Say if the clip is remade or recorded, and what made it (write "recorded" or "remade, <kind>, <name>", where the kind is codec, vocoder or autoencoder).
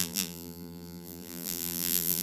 remade, vocoder, BigVGAN v2